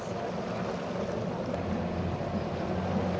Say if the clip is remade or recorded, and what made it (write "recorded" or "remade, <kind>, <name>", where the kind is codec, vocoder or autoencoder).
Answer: recorded